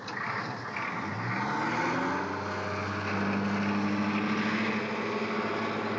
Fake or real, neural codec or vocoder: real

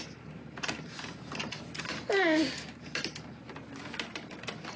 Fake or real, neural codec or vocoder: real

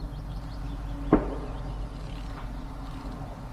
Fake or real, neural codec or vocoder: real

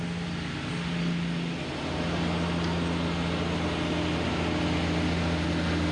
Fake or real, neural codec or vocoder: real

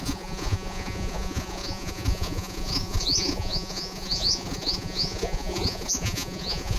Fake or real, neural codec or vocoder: fake, vocoder, Vocos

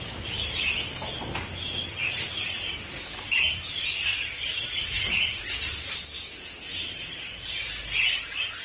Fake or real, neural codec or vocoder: real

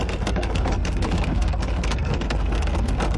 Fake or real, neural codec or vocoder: fake, codec, SNAC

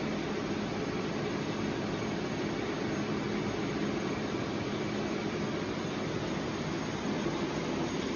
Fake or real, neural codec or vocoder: real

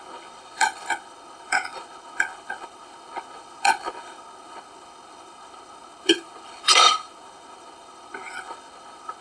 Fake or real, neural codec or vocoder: fake, codec, HILCodec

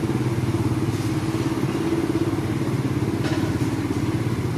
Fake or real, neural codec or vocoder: real